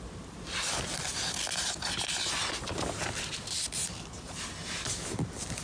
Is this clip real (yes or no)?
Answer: yes